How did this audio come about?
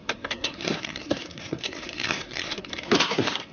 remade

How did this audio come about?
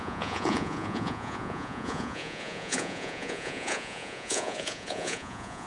remade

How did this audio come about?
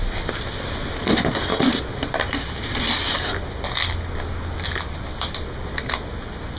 recorded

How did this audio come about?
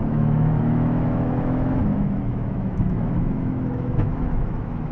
remade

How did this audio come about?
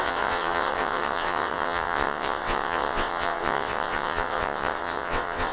remade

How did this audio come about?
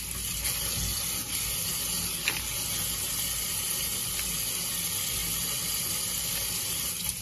recorded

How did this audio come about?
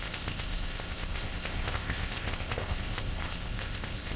remade